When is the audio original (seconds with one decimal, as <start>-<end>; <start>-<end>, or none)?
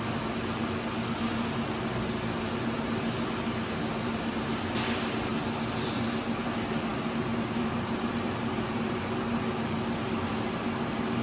0.0-11.2